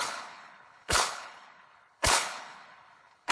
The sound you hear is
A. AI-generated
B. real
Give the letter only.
A